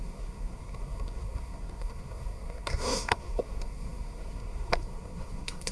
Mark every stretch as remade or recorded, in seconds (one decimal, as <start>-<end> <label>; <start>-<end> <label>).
0.0-5.7 remade